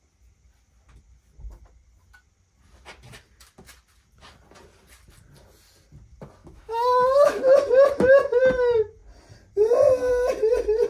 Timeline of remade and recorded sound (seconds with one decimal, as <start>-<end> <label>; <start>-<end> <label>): 0.0-6.4 recorded; 6.4-8.4 remade; 8.4-10.9 recorded